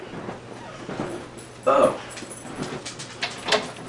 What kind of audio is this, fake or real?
real